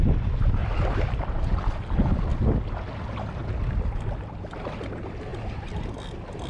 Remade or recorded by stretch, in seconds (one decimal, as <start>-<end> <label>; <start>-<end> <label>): 0.0-0.6 recorded; 0.6-1.2 remade; 1.2-6.5 recorded